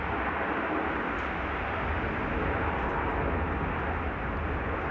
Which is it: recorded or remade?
recorded